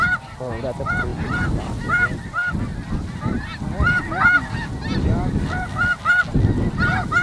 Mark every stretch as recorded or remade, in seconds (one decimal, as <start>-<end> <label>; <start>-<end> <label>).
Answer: 0.0-7.2 recorded